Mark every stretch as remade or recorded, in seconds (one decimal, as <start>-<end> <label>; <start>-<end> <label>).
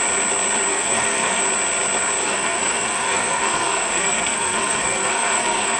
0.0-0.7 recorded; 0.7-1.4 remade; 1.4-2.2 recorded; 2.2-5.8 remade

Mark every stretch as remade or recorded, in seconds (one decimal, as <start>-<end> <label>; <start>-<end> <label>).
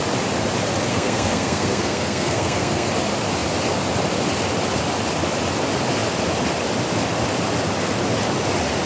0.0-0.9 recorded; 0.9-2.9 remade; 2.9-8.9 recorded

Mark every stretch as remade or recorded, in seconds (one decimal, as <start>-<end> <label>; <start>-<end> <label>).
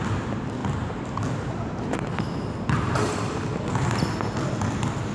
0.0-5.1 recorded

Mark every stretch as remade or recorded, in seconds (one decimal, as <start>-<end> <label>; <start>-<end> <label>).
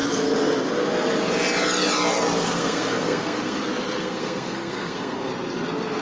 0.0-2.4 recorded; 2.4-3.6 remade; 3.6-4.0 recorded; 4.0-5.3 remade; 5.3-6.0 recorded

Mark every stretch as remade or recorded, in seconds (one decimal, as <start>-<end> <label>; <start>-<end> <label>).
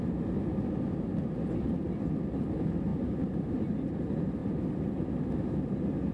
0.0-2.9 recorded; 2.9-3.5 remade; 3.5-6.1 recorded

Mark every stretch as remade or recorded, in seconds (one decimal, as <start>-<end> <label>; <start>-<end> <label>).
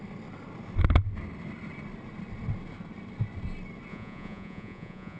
0.0-3.9 recorded; 3.9-5.2 remade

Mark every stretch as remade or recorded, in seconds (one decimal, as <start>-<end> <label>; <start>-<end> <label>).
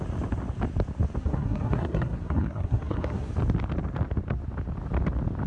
0.0-1.2 recorded; 1.2-3.3 remade; 3.3-5.5 recorded